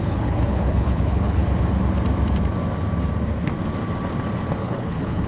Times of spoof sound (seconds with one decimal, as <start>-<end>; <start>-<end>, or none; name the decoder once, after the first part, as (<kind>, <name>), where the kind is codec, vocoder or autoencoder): 0.0-1.4 (codec, HILCodec); 4.6-5.3